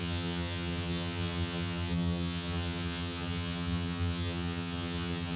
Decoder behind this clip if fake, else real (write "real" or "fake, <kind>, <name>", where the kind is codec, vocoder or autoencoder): fake, vocoder, HiFi-GAN